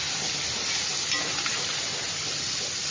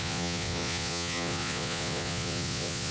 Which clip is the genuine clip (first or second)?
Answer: first